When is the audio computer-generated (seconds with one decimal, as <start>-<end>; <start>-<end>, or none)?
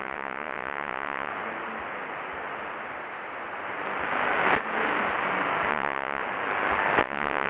0.0-1.3; 5.7-6.2; 7.0-7.5